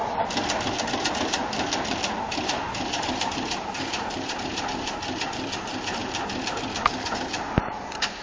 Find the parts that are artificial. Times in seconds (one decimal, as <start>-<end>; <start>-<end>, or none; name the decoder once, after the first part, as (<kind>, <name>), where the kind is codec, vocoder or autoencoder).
0.8-1.4 (vocoder, BigVGAN v2); 2.4-6.0; 6.8-8.2